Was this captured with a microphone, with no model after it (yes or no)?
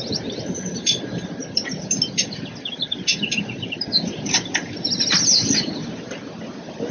yes